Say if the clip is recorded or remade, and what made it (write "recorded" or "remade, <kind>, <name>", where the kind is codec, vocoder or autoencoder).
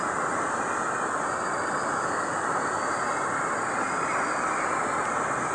recorded